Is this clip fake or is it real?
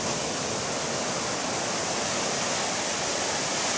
real